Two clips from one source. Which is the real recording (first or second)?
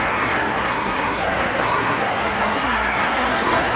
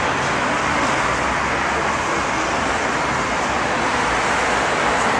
second